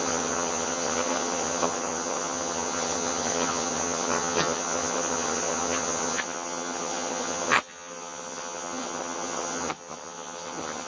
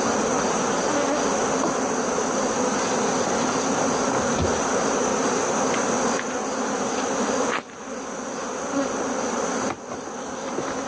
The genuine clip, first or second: second